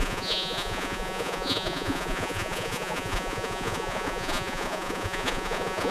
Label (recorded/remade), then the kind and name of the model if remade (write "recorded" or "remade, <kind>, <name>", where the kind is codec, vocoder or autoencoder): remade, vocoder, Vocos